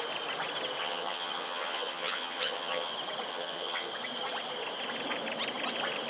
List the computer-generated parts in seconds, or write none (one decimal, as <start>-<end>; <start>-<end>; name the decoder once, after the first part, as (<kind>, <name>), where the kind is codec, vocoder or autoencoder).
0.8-2.9 (vocoder, HiFi-GAN); 3.3-3.9